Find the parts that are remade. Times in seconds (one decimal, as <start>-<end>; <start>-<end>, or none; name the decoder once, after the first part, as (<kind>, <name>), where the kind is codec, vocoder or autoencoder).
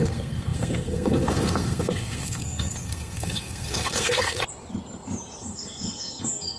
0.0-4.4 (codec, SNAC); 5.4-6.6